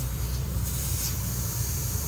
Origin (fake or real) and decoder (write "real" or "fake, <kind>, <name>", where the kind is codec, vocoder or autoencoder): fake, vocoder, BigVGAN v2